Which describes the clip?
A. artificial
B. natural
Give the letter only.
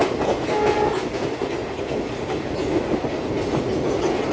B